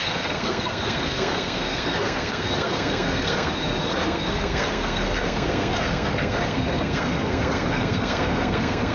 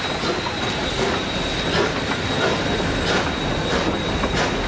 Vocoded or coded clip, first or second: first